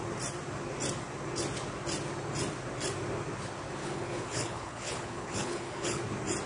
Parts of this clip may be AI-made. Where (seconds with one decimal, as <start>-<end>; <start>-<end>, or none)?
3.8-6.0

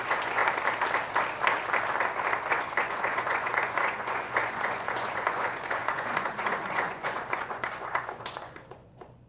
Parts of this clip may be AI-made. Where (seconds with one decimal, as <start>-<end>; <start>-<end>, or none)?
0.0-0.4; 2.4-9.3

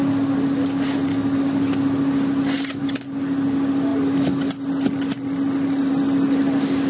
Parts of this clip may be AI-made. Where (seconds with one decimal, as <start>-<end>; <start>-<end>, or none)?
none

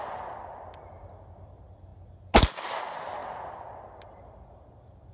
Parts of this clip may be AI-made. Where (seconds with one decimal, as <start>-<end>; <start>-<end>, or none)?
none

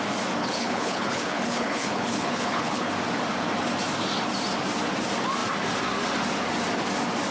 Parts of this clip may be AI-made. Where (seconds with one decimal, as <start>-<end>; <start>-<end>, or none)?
0.4-2.9

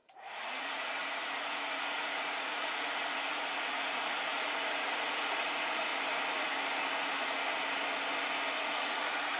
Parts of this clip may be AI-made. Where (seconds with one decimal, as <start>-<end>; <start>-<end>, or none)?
0.0-5.9; 8.5-9.4

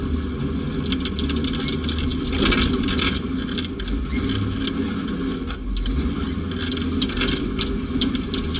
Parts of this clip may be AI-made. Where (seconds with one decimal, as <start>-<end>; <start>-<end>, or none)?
none

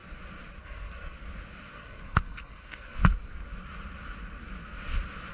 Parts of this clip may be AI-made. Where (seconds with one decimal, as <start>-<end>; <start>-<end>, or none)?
0.6-1.2; 1.7-3.0